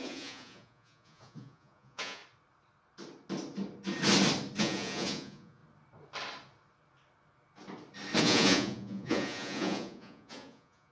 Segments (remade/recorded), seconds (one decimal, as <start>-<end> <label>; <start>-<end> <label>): 0.0-2.2 remade; 2.2-4.6 recorded; 4.6-5.6 remade; 5.6-8.2 recorded; 8.2-10.9 remade